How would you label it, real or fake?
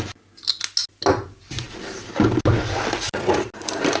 real